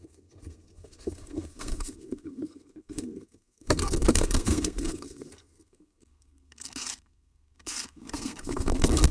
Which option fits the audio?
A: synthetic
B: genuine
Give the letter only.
A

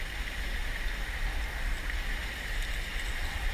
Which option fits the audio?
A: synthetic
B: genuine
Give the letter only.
B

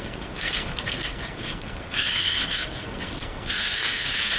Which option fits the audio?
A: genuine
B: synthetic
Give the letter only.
B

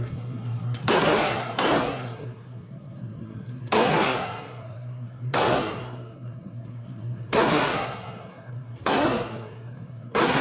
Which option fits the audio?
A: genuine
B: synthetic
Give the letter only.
B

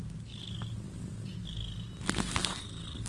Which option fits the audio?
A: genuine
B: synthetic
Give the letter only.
A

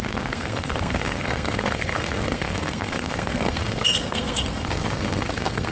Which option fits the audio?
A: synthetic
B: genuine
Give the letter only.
A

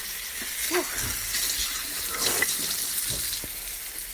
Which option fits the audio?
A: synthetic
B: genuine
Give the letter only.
B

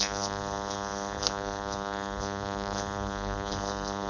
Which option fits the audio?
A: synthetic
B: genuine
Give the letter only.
A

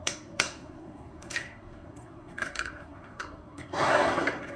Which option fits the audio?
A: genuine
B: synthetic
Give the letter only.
B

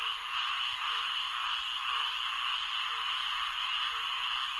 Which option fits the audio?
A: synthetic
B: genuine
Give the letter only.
B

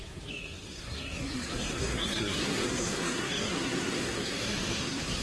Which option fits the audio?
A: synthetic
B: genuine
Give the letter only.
A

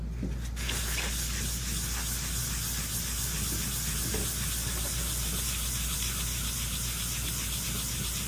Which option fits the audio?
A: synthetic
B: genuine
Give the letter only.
B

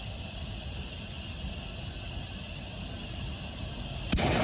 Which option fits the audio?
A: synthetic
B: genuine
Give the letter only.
B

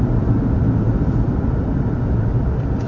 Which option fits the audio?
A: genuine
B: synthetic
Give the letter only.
A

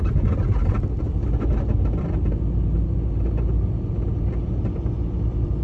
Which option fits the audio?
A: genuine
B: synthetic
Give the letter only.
A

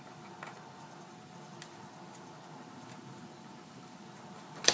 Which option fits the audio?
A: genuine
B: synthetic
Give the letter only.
A